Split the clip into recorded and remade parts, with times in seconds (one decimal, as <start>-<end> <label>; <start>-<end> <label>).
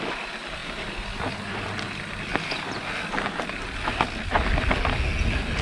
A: 0.0-5.6 recorded